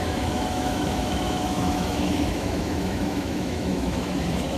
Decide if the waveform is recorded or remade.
remade